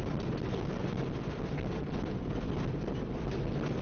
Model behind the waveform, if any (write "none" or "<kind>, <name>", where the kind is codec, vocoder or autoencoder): none